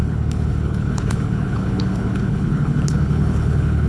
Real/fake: fake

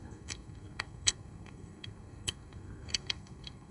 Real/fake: fake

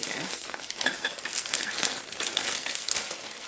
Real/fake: fake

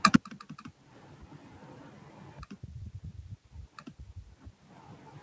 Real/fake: real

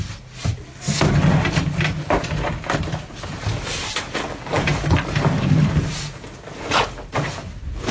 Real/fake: real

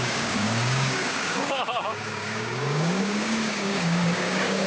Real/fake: fake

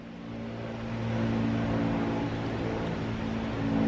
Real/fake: real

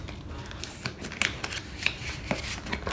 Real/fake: real